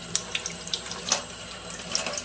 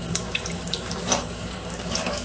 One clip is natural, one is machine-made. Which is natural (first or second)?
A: first